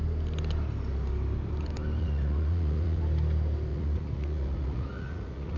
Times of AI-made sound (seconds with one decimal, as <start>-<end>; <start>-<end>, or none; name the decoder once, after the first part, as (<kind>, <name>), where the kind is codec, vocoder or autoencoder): 2.0-3.0 (vocoder, Vocos); 3.7-5.6